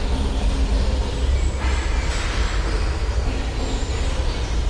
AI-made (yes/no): no